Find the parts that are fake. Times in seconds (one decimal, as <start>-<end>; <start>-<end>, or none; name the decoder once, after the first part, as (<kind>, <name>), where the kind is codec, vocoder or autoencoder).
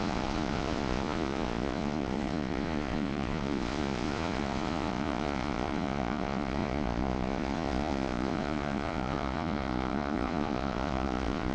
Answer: 0.0-11.5 (vocoder, Vocos)